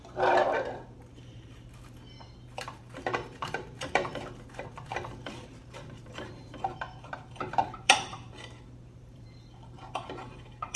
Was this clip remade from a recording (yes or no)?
yes